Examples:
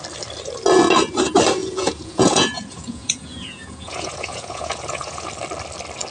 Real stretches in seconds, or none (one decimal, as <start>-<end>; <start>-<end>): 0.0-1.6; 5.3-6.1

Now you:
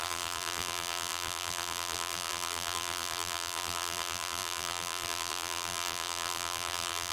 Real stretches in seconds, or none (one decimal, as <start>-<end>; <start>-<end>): none

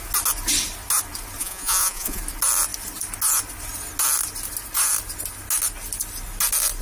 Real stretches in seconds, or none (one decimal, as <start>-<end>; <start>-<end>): 0.0-1.4; 2.2-6.8

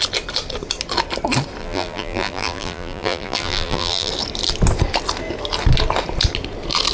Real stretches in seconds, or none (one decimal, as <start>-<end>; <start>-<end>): 0.0-1.6; 4.1-6.9